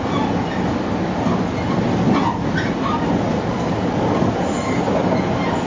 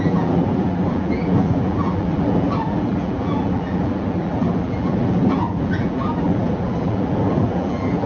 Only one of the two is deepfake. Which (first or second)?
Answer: second